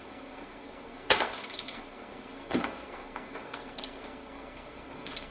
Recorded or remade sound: remade